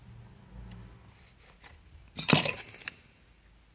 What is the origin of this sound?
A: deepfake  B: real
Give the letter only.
B